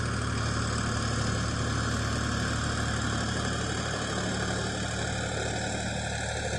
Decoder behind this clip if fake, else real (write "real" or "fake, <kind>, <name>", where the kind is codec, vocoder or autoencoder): real